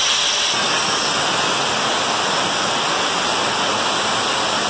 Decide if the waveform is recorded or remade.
recorded